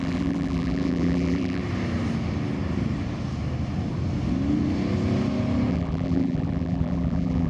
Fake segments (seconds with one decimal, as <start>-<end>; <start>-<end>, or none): 0.0-1.6; 5.7-7.5